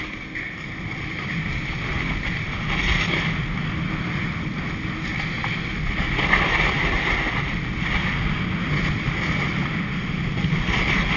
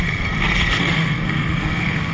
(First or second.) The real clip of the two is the first